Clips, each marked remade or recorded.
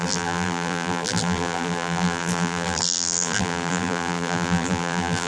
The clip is remade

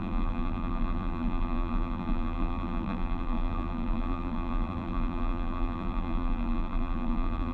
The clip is remade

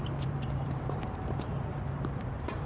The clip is remade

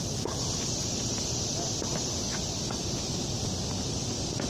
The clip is recorded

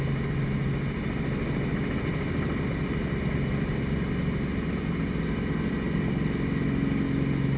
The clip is recorded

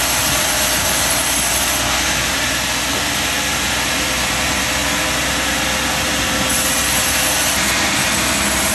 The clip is recorded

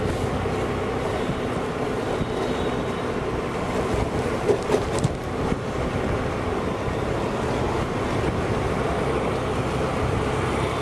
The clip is recorded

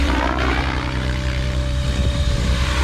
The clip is remade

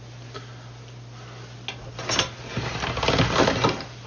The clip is recorded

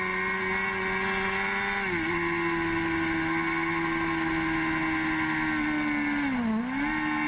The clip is recorded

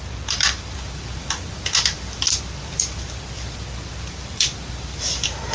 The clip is remade